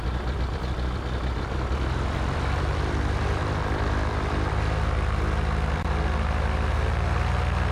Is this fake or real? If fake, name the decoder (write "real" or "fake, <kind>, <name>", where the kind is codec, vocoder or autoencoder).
fake, vocoder, BigVGAN v2